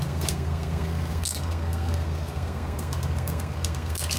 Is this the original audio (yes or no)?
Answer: no